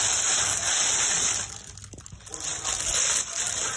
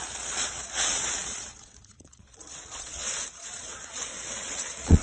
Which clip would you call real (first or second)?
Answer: first